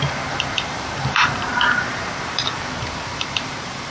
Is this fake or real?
fake